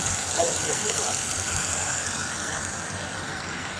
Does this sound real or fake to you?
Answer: fake